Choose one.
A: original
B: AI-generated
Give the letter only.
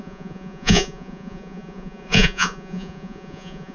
B